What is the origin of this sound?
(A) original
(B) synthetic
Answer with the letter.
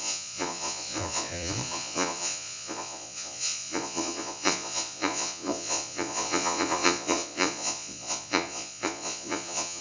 B